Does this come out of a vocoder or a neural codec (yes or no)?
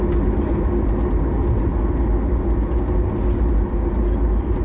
no